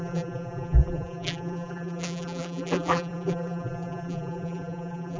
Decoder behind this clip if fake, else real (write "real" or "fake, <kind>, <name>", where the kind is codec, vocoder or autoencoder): fake, vocoder, BigVGAN v2